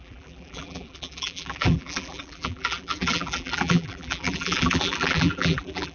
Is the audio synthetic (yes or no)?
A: yes